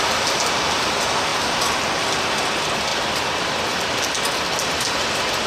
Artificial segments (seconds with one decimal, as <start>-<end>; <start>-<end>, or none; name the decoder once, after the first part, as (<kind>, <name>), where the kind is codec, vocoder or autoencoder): none